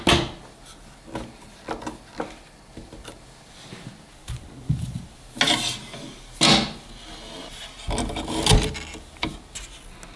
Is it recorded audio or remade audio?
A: recorded